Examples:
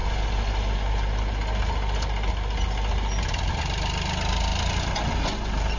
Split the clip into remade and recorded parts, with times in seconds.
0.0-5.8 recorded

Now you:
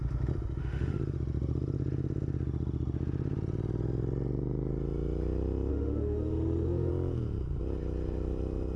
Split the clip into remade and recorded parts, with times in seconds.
0.0-0.6 recorded; 0.6-1.0 remade; 1.0-5.7 recorded; 5.7-6.9 remade; 6.9-8.8 recorded

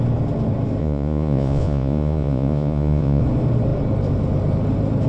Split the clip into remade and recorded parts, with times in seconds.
0.0-0.8 recorded; 0.8-3.2 remade; 3.2-5.1 recorded

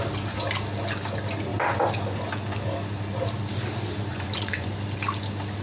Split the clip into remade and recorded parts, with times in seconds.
0.0-4.1 recorded; 4.1-4.7 remade; 4.7-5.6 recorded

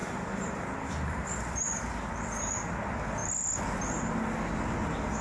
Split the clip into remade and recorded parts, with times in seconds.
0.0-1.9 remade; 1.9-5.2 recorded

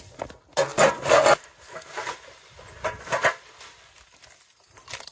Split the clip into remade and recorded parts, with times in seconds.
0.0-5.1 recorded

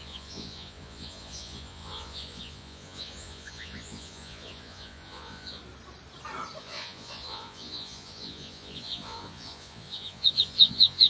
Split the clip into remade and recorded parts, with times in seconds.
0.0-5.6 remade; 5.6-6.6 recorded; 6.6-11.1 remade